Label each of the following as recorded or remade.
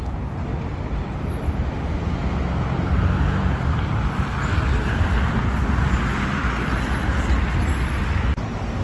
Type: recorded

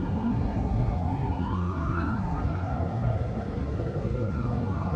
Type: remade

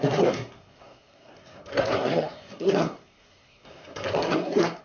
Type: remade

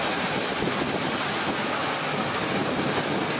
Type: recorded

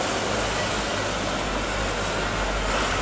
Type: recorded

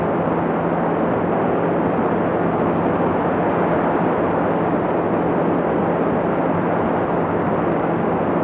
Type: recorded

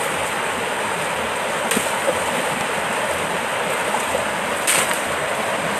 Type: recorded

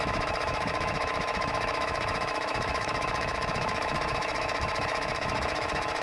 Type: remade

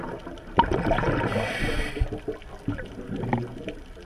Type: recorded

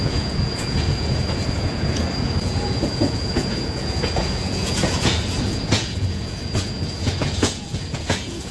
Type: remade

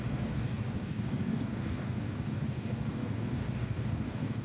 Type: remade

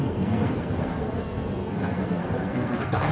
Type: remade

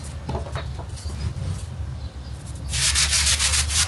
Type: recorded